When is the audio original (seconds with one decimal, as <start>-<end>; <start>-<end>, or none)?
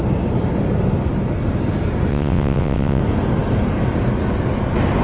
0.0-2.1; 3.0-5.0